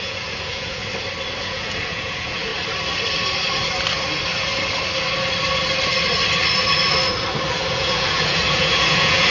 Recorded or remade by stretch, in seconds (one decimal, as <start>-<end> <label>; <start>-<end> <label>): 0.0-0.8 remade; 0.8-1.4 recorded; 1.4-2.5 remade; 2.5-7.6 recorded; 7.6-9.3 remade